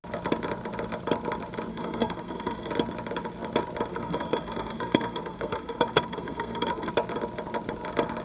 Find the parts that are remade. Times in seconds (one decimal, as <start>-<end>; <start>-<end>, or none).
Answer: 1.7-2.7; 3.9-6.9